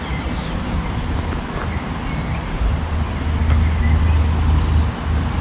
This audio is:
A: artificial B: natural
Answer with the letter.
B